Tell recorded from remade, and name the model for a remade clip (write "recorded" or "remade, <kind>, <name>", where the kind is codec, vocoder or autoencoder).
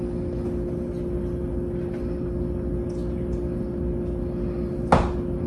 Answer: recorded